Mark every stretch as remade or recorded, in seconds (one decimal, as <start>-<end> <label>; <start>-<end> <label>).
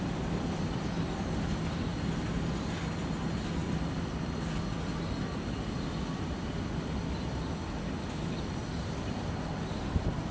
0.0-10.3 recorded